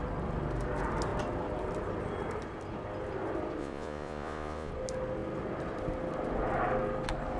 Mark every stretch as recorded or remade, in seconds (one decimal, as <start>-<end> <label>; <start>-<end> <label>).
0.0-3.6 recorded; 3.6-4.7 remade; 4.7-7.4 recorded